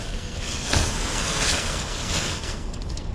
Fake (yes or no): yes